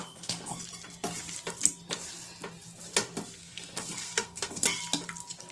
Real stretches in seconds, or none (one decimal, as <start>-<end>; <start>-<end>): 0.6-3.4; 4.8-5.5